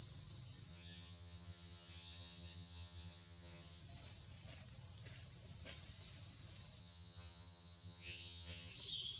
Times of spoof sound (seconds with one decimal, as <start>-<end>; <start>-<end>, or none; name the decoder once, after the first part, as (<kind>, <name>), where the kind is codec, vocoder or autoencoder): 0.7-3.8 (vocoder, HiFi-GAN); 6.8-8.7